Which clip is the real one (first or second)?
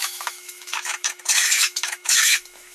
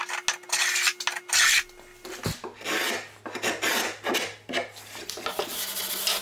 second